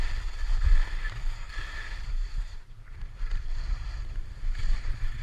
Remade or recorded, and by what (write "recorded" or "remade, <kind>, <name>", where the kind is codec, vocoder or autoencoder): remade, vocoder, BigVGAN v2